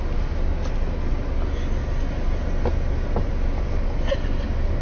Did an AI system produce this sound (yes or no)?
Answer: no